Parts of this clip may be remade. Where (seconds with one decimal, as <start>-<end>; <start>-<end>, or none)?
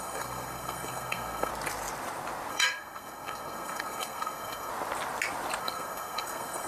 0.0-1.5; 2.5-4.7; 5.6-6.7